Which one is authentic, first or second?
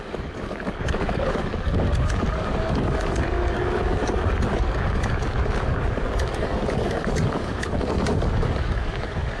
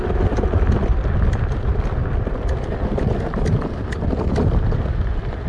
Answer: second